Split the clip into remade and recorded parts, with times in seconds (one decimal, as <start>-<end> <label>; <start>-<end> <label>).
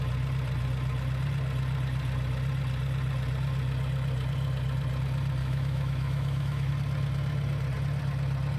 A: 0.0-5.4 recorded; 5.4-6.7 remade; 6.7-8.6 recorded